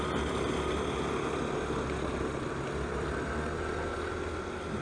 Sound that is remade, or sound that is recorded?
recorded